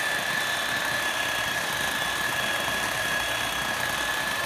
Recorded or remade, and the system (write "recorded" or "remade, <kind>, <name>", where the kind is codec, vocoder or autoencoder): recorded